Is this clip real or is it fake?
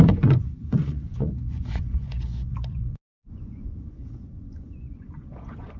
fake